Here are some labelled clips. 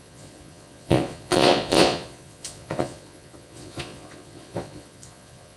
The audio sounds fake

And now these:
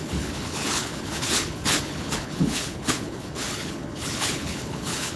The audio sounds fake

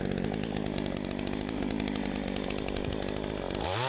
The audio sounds real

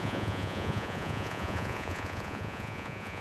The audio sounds fake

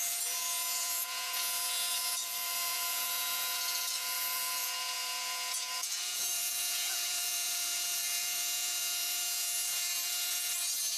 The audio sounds fake